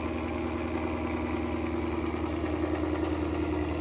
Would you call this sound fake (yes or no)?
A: no